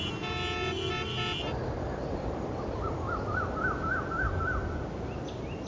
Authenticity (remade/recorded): recorded